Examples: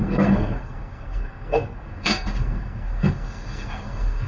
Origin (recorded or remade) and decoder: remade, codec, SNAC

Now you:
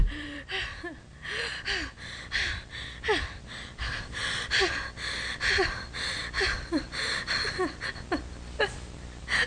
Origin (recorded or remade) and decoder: recorded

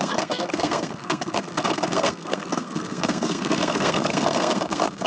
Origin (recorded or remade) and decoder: remade, codec, SNAC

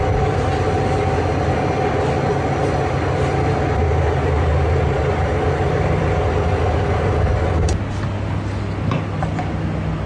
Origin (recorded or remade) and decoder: recorded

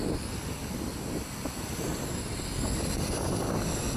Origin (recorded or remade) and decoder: recorded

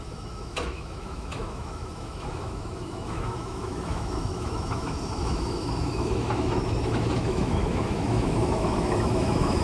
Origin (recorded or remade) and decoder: remade, autoencoder, DAC-VAE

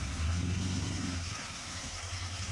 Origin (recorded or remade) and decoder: remade, codec, SNAC